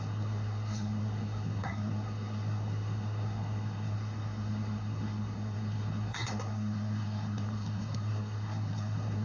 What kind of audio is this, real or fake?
fake